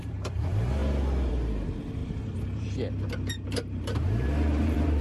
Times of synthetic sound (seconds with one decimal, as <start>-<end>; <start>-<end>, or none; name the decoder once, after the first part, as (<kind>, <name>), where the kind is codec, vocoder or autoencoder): 0.0-0.8 (vocoder, BigVGAN v2); 1.3-5.0